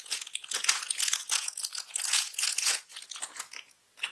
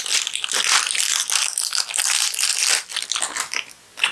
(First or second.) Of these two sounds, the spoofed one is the first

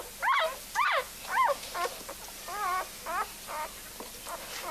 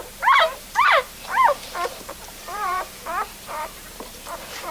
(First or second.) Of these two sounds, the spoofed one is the second